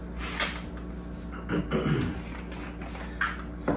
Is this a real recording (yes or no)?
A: yes